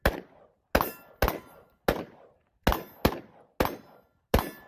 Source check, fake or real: real